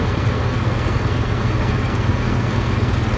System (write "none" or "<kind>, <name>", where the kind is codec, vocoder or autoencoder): codec, SNAC